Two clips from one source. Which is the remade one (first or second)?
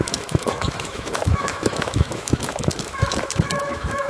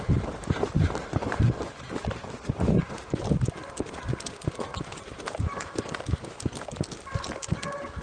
first